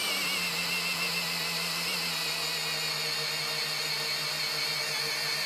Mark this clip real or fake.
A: real